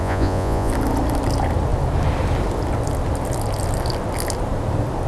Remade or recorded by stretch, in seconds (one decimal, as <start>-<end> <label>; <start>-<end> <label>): 0.0-0.7 remade; 0.7-5.1 recorded